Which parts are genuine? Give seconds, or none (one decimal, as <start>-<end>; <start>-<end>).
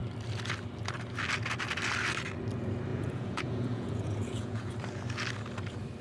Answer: 0.0-2.9; 4.7-6.0